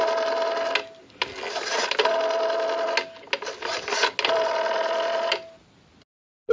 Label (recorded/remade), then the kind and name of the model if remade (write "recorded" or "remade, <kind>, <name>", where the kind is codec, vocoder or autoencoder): recorded